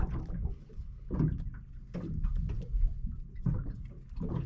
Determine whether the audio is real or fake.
real